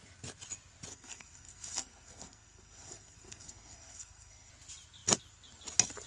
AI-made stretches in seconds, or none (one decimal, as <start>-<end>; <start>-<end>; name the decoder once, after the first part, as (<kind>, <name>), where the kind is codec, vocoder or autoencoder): 0.9-4.5 (codec, SNAC)